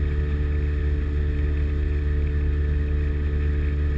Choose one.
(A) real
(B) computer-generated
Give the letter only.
A